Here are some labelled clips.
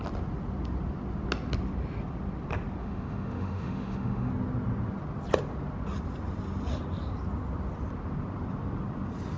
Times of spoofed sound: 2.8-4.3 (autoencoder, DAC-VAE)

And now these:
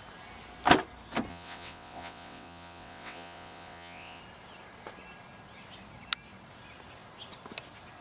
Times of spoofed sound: 1.3-4.2 (vocoder, WaveNeXt)

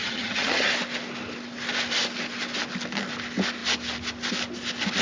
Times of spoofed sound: 0.0-0.7 (vocoder, HiFi-GAN)

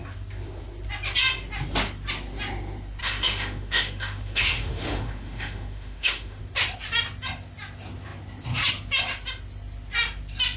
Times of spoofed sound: 3.0-6.4 (autoencoder, DAC-VAE)

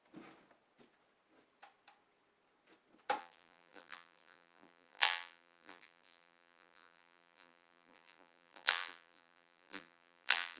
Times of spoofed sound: 3.2-10.6 (vocoder, BigVGAN v2)

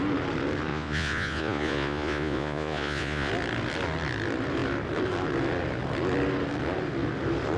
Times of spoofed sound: 0.7-3.3 (vocoder, Vocos)

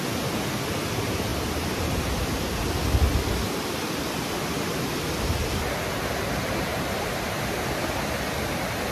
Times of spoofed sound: 1.3-1.8 (vocoder, BigVGAN v2); 6.7-8.0

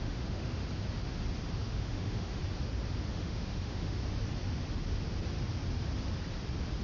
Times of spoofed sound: 0.0-0.6 (autoencoder, DAC-VAE); 1.6-2.4; 3.1-4.0